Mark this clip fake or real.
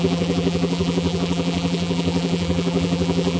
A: fake